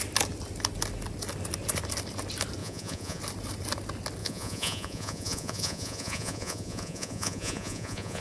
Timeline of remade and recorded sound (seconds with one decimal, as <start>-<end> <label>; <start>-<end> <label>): 0.0-2.6 recorded; 2.6-3.2 remade; 3.2-4.2 recorded; 4.2-8.2 remade